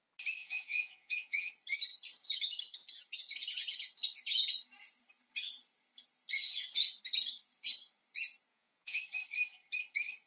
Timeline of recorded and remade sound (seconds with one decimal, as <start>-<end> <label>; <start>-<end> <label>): 0.0-0.4 recorded; 0.4-1.5 remade; 1.5-8.5 recorded; 8.5-9.0 remade; 9.0-10.3 recorded